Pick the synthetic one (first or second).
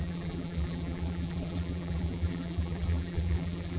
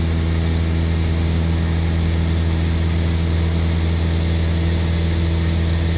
first